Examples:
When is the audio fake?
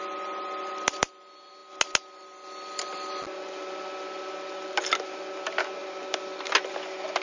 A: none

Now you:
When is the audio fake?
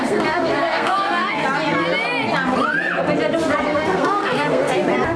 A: 0.0-1.4; 3.6-4.7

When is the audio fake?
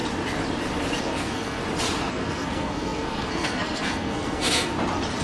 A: 1.0-1.6; 2.1-4.7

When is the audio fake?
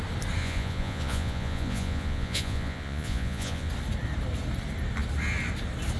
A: 0.4-3.7